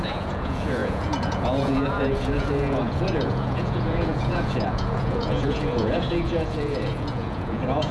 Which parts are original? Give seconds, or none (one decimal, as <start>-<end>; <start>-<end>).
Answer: none